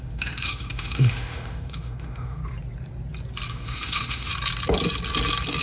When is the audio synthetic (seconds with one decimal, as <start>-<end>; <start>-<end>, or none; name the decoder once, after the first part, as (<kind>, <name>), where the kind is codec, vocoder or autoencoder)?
0.0-2.4 (autoencoder, DAC-VAE); 3.5-4.3